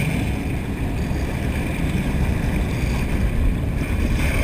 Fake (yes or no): no